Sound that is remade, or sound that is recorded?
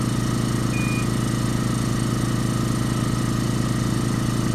recorded